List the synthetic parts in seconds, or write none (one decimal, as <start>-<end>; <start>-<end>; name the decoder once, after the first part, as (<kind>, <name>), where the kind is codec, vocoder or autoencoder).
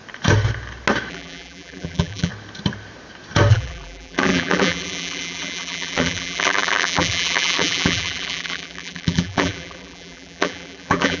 1.1-2.3 (vocoder, BigVGAN v2); 3.5-11.2